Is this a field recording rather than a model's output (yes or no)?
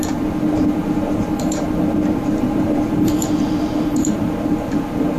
no